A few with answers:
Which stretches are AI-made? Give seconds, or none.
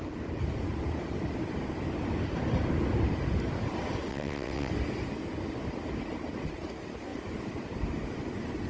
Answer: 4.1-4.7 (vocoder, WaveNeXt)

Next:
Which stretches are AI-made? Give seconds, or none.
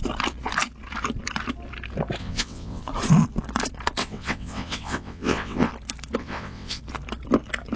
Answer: 2.2-2.8 (vocoder, WaveNeXt); 4.0-5.7; 6.2-6.8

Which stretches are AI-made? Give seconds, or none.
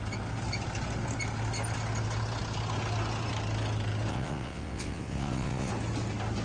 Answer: 4.1-5.7 (vocoder, WaveNeXt)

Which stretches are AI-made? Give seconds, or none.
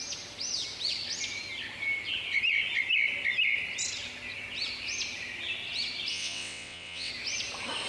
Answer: 6.1-7.1 (vocoder, WaveNeXt)